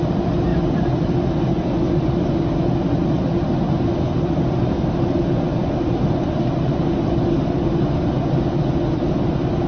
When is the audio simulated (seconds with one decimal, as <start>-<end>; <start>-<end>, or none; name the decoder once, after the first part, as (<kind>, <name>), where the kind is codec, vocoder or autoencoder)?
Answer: none